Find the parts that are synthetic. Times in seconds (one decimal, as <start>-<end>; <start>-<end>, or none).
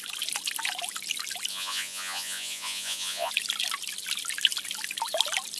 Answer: 1.5-3.3